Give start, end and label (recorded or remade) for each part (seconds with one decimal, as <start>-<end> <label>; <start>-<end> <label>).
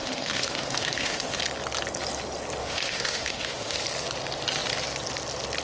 0.0-1.4 remade; 1.4-2.6 recorded; 2.6-3.8 remade; 3.8-5.6 recorded